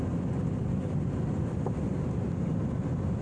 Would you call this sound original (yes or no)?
yes